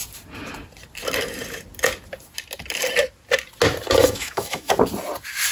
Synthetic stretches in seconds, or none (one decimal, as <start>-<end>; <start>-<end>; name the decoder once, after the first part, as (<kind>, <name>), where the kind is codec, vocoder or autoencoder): 4.0-4.7 (autoencoder, DAC-VAE)